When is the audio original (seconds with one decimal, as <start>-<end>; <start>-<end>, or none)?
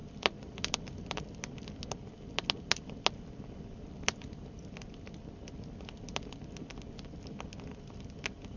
0.0-8.6